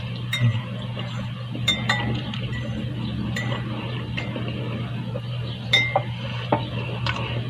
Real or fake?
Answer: fake